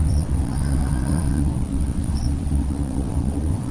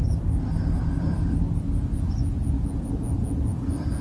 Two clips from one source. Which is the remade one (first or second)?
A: first